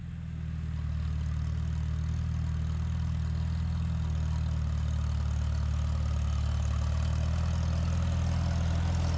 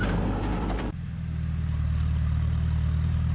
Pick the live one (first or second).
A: first